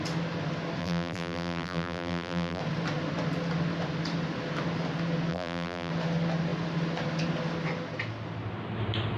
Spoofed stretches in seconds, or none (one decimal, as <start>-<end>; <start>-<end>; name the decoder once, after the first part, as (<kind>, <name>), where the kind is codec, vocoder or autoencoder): 0.8-2.6 (vocoder, BigVGAN v2); 5.3-5.9